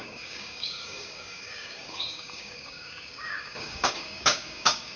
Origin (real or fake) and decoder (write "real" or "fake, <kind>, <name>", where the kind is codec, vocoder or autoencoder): fake, codec, DAC